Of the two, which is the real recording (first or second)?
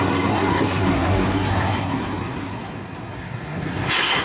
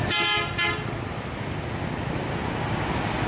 second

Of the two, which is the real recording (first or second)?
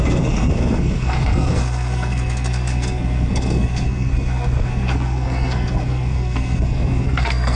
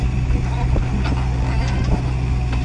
second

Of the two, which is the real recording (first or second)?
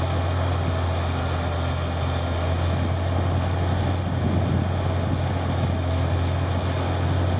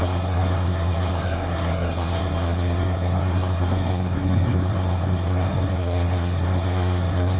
first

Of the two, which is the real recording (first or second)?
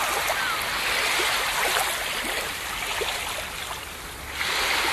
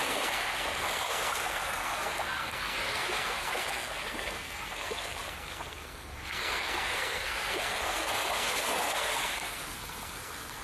first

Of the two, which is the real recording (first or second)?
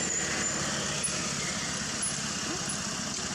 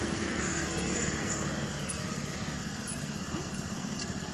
first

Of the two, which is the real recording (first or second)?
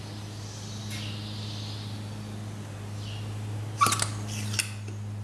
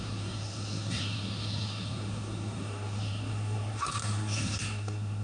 first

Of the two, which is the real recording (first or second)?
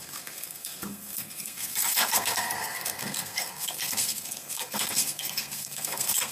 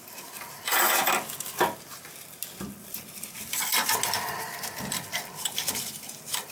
second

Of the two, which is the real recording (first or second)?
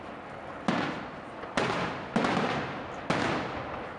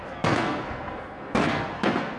first